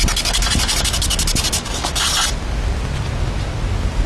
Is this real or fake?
real